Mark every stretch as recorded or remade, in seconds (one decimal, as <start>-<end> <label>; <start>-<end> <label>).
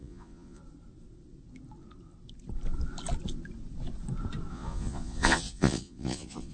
0.0-0.6 remade; 0.6-4.5 recorded; 4.5-6.5 remade